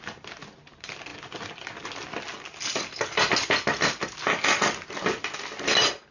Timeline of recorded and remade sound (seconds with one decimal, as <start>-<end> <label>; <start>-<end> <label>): 0.0-6.1 recorded